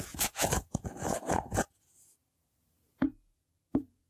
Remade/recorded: remade